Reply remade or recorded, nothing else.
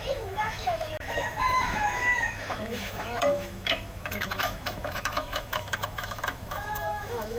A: remade